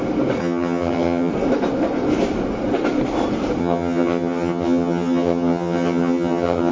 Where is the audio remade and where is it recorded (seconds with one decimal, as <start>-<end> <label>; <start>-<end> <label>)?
0.0-0.4 recorded; 0.4-1.3 remade; 1.3-3.6 recorded; 3.6-6.7 remade